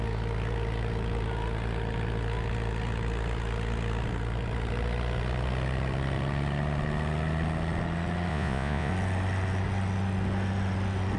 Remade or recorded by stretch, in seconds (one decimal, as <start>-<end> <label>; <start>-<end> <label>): 0.0-8.3 recorded; 8.3-8.9 remade; 8.9-11.2 recorded